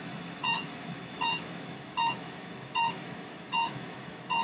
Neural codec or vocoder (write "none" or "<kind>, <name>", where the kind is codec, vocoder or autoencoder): autoencoder, DAC-VAE